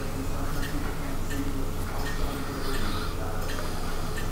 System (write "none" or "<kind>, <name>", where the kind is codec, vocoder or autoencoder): none